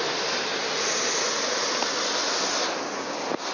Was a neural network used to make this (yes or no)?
no